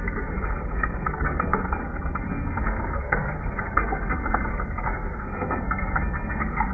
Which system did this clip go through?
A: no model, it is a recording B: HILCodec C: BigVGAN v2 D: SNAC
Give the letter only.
D